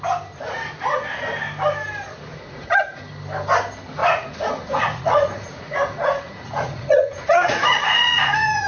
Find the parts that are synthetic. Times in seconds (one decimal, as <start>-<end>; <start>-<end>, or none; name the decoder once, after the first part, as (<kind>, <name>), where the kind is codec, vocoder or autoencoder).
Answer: 2.3-3.0 (vocoder, Vocos); 4.0-8.7